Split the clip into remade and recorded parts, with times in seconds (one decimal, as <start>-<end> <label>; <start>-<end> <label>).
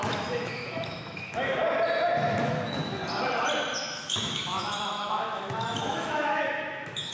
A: 0.0-1.6 remade; 1.6-2.4 recorded; 2.4-3.0 remade; 3.0-3.8 recorded; 3.8-7.1 remade